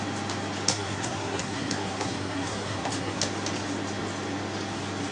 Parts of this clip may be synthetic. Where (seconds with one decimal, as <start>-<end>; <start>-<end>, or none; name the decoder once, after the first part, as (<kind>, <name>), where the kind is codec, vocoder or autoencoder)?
0.7-3.2 (codec, SNAC)